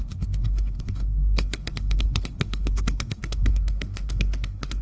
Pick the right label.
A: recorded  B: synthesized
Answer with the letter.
B